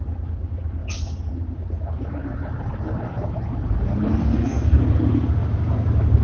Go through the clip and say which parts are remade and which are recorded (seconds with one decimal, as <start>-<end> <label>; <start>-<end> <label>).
0.0-4.2 recorded; 4.2-4.8 remade; 4.8-6.2 recorded